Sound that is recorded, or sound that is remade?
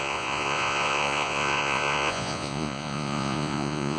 remade